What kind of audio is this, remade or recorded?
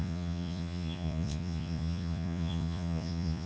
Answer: remade